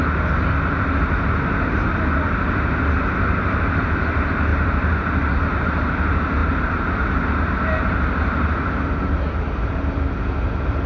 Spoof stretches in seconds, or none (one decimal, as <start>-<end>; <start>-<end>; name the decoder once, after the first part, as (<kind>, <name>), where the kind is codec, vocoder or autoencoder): 4.5-5.4 (vocoder, BigVGAN v2); 6.4-7.0